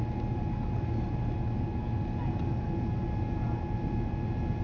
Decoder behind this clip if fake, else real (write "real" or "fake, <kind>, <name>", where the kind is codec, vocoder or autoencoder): real